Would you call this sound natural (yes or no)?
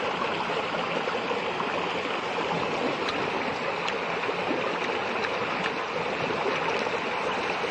yes